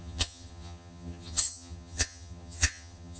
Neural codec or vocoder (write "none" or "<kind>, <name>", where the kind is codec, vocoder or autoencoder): vocoder, HiFi-GAN